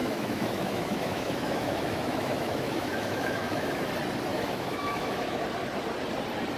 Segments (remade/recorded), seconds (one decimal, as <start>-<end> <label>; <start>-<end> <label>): 0.0-3.9 remade; 3.9-4.3 recorded; 4.3-5.4 remade; 5.4-6.6 recorded